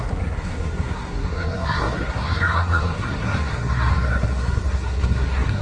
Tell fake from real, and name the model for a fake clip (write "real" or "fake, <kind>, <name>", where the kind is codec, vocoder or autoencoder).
fake, codec, SNAC